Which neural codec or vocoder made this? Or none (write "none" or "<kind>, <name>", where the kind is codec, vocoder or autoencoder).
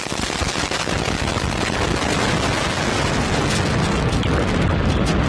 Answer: none